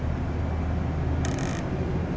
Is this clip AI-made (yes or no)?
no